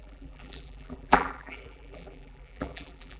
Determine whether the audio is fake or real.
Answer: fake